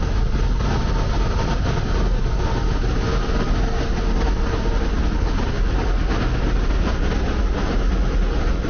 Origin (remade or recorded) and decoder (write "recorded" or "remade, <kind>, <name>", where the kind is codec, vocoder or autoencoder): recorded